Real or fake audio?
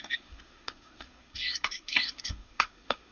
fake